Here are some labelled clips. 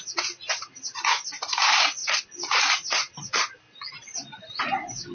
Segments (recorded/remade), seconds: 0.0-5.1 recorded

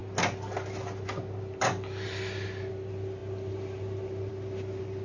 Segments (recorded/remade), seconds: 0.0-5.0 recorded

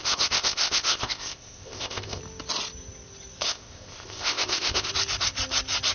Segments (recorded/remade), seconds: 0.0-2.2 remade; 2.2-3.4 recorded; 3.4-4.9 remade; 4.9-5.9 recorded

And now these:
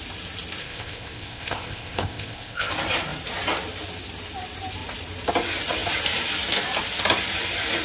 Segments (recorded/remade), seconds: 0.0-0.6 recorded; 0.6-2.7 remade; 2.7-7.8 recorded

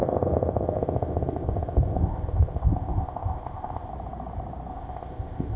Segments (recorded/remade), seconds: 0.0-3.9 remade; 3.9-4.7 recorded; 4.7-5.6 remade

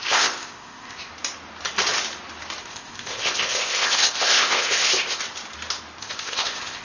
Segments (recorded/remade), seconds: 0.0-1.1 remade; 1.1-2.6 recorded; 2.6-5.2 remade; 5.2-6.0 recorded; 6.0-6.8 remade

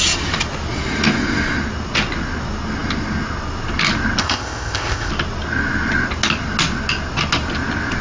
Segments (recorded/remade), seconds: 0.0-4.2 recorded; 4.2-5.1 remade; 5.1-8.0 recorded